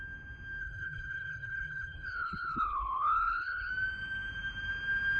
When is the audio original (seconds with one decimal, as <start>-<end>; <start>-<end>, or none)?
0.0-0.6; 3.7-5.2